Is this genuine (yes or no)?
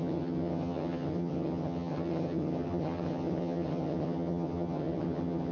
no